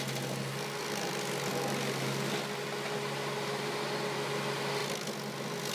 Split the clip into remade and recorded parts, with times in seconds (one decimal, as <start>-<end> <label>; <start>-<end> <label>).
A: 0.0-5.7 recorded